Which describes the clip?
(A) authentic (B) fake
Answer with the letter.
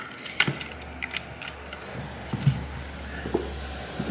A